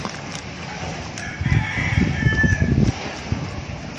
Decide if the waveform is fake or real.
real